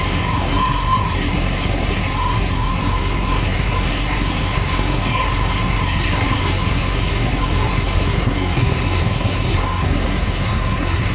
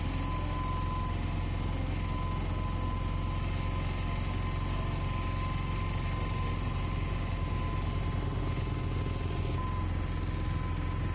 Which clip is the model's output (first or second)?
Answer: first